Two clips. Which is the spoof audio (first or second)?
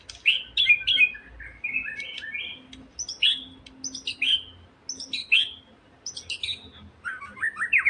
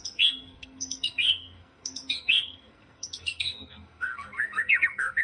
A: second